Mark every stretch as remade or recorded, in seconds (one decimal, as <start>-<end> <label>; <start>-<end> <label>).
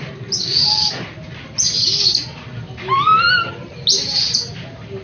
0.0-5.0 recorded